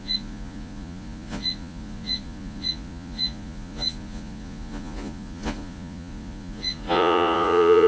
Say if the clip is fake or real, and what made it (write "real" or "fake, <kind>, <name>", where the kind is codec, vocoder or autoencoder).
fake, vocoder, Vocos